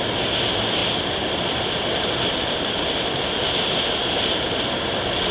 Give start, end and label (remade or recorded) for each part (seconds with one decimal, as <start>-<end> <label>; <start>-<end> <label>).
0.0-0.8 recorded; 0.8-4.0 remade; 4.0-5.3 recorded